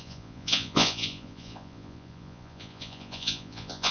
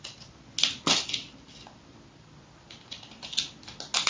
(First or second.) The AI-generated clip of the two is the first